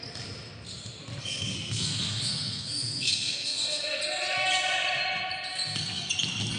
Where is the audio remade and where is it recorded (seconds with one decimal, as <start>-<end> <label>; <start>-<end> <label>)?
0.0-1.2 recorded; 1.2-4.0 remade; 4.0-5.5 recorded; 5.5-6.1 remade; 6.1-6.6 recorded